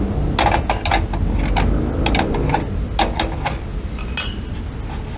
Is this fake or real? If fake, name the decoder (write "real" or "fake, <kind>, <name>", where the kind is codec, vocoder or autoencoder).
real